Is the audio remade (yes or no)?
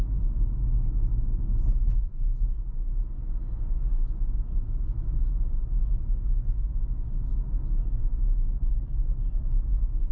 no